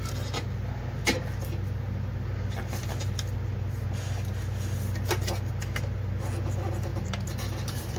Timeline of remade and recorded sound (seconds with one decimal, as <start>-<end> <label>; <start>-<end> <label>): 0.0-6.9 recorded; 6.9-8.0 remade